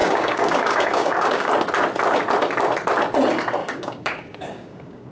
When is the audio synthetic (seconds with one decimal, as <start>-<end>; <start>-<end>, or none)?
0.0-1.5; 3.6-5.1